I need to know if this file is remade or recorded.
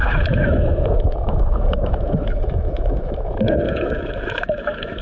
remade